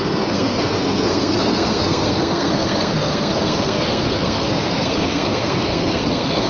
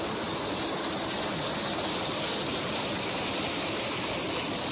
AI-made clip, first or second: first